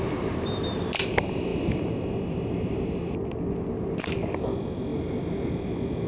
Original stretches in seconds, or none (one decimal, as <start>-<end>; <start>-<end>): 0.0-6.1